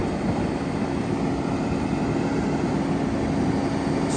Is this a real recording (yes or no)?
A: yes